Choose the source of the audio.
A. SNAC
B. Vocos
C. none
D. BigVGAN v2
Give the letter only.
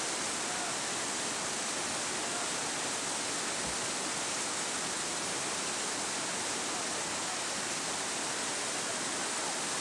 C